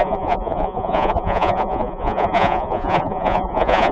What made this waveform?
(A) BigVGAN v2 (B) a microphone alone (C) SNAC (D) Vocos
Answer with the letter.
D